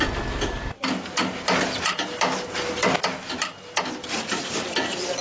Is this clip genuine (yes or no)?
yes